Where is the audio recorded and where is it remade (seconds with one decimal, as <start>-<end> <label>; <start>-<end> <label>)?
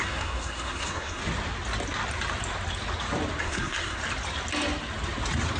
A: 0.0-1.2 remade; 1.2-3.4 recorded; 3.4-4.0 remade; 4.0-5.6 recorded